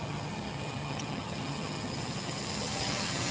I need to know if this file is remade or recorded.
remade